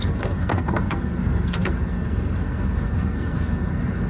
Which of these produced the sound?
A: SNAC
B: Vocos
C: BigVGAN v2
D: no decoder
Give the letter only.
A